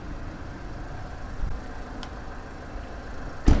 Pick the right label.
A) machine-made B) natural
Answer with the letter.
B